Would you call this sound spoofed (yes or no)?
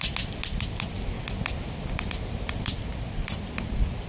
no